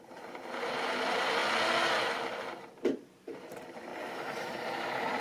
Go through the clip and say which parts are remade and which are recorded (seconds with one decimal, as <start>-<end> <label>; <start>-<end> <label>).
0.0-1.4 remade; 1.4-2.8 recorded; 2.8-5.2 remade